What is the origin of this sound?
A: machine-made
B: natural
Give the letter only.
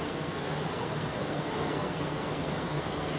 A